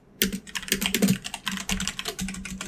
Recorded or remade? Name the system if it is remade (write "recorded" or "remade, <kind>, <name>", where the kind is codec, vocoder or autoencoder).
recorded